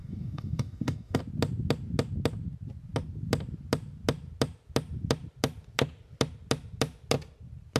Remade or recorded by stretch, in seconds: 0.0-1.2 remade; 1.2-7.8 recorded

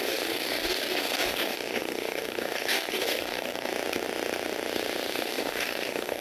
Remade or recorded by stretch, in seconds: 0.0-3.7 remade; 3.7-5.1 recorded; 5.1-6.2 remade

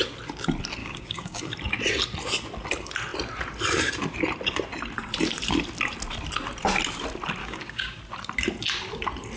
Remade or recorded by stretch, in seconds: 0.0-0.8 recorded; 0.8-1.4 remade; 1.4-7.4 recorded; 7.4-8.0 remade; 8.0-9.4 recorded

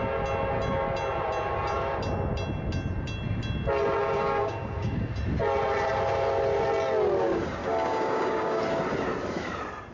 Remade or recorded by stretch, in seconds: 0.0-4.0 recorded; 4.0-5.1 remade; 5.1-7.6 recorded; 7.6-8.6 remade; 8.6-9.9 recorded

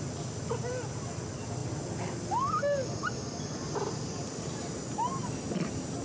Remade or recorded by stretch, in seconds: 0.0-6.0 recorded